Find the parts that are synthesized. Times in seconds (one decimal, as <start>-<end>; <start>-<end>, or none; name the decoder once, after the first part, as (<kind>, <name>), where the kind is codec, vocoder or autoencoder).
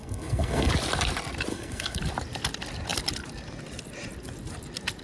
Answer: 0.0-0.7 (codec, SNAC); 1.5-2.0